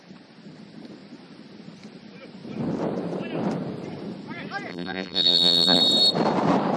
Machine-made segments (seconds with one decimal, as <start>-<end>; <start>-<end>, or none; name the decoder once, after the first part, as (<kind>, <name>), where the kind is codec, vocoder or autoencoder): 4.7-5.8 (vocoder, BigVGAN v2)